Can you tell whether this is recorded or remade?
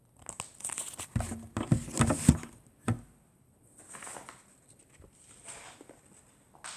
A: recorded